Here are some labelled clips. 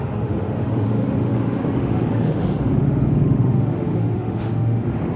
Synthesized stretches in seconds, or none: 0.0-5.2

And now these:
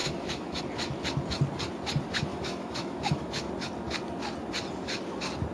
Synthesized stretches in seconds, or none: 0.0-0.6; 2.3-3.5

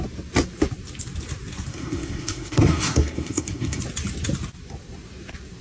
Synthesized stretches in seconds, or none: 1.7-3.8

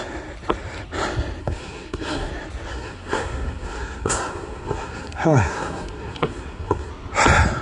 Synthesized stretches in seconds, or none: 1.4-2.3; 2.7-6.9

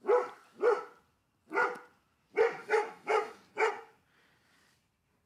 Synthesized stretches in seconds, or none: 2.6-3.4